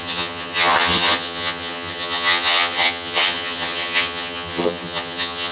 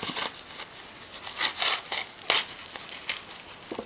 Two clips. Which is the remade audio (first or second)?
first